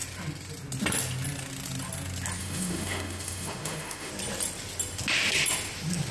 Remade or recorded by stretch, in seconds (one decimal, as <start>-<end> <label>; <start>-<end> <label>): 0.0-2.4 recorded; 2.4-4.1 remade; 4.1-6.1 recorded